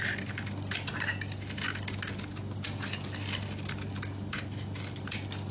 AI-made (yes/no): no